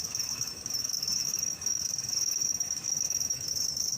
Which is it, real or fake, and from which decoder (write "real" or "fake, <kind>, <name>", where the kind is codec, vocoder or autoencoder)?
fake, autoencoder, DAC-VAE